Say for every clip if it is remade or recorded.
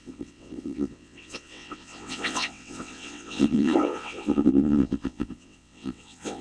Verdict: remade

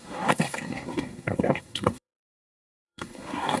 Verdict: remade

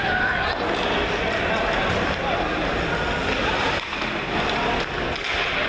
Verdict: recorded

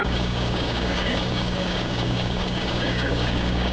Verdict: remade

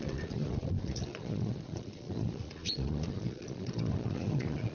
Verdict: remade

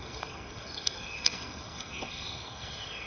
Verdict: remade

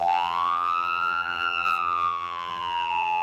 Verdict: remade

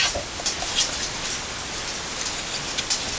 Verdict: recorded